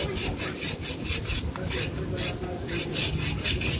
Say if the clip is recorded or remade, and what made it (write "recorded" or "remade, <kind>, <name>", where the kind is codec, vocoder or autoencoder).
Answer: recorded